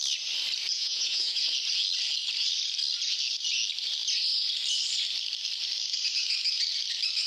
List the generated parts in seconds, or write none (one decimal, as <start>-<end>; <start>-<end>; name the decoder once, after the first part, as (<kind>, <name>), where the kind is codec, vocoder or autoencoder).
0.7-1.4 (vocoder, Vocos)